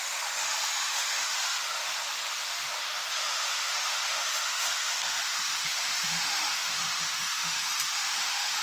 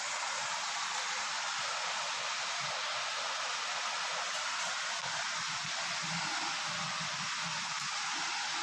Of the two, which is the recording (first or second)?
second